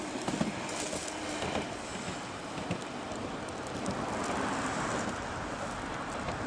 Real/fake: real